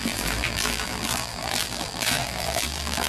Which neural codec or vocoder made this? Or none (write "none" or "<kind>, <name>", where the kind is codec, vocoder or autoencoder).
vocoder, BigVGAN v2